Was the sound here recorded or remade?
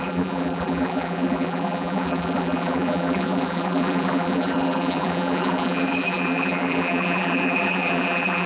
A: remade